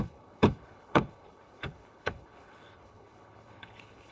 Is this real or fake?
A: fake